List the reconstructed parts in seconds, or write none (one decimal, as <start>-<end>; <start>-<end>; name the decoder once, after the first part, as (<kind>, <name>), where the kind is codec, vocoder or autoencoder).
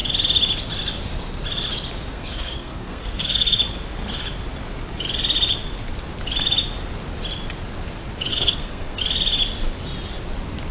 2.1-3.6 (codec, SNAC); 8.3-9.0